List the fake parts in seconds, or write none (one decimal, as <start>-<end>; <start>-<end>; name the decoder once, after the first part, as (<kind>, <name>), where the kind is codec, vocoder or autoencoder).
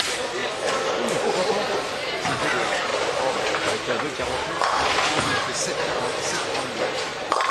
0.4-1.5 (vocoder, BigVGAN v2); 2.9-4.0